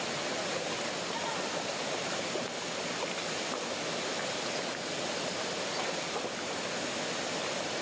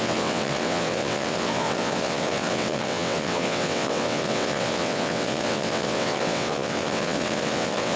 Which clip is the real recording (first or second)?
first